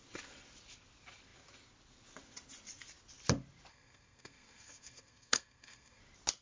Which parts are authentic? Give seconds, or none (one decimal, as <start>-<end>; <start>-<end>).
0.0-3.7; 6.0-6.4